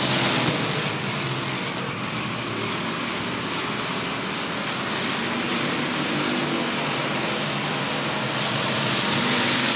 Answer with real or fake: real